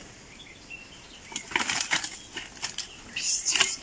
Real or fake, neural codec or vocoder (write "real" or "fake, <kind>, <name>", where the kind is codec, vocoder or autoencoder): real